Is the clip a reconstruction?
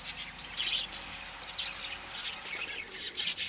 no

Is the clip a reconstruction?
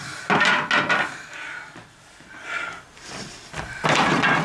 no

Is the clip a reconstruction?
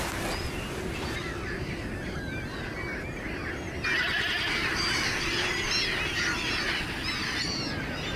no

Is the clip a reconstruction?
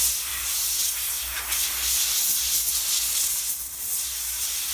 no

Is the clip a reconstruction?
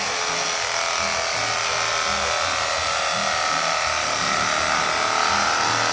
no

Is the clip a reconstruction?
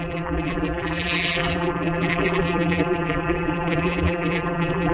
yes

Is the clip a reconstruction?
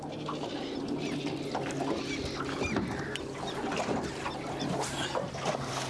no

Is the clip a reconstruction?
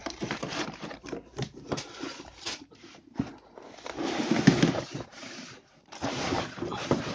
yes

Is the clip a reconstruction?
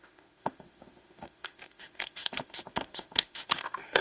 yes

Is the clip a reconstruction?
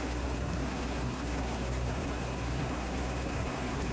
yes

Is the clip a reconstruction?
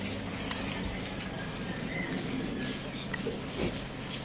no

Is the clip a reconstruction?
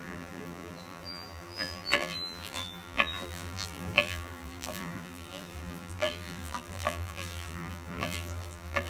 yes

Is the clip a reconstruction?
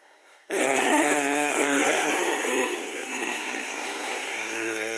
yes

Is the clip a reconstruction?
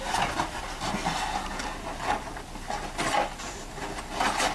no